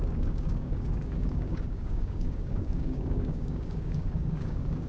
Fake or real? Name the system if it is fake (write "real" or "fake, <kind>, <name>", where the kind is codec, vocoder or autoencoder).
fake, codec, DAC